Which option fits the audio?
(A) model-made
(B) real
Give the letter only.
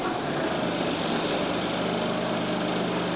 B